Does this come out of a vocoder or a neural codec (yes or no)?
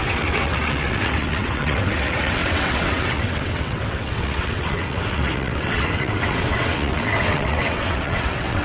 yes